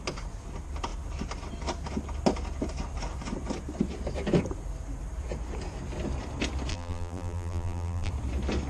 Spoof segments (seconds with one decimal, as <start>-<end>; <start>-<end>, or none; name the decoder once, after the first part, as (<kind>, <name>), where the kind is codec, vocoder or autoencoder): 6.7-8.1 (vocoder, BigVGAN v2)